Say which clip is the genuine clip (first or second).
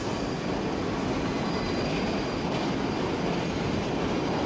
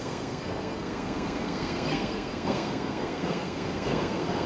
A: first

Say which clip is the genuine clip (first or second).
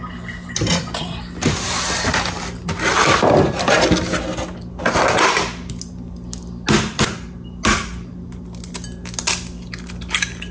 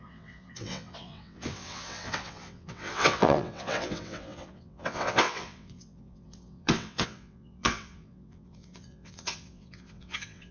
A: first